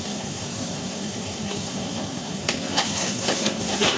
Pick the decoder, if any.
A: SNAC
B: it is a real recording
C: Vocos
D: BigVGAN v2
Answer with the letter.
A